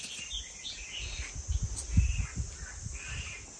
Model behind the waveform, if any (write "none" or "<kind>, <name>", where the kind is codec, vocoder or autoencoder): none